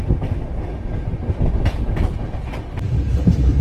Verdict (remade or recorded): recorded